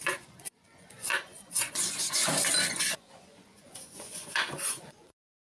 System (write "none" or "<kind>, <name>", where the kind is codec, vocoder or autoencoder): vocoder, Vocos